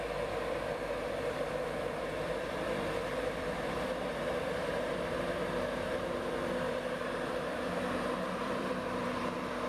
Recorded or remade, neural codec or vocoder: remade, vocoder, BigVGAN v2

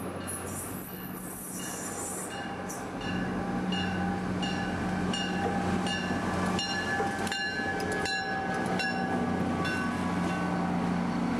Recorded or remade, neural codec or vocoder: recorded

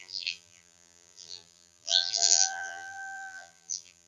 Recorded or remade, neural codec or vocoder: remade, vocoder, BigVGAN v2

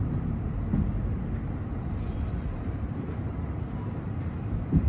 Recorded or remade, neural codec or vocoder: remade, vocoder, BigVGAN v2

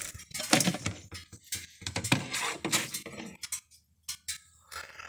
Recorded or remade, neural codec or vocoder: recorded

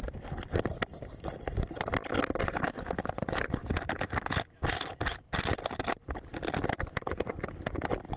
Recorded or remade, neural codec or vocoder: recorded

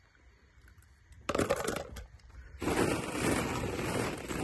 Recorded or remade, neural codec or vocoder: recorded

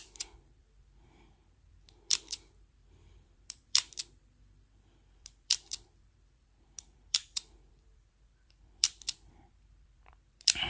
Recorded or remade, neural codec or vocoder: remade, vocoder, BigVGAN v2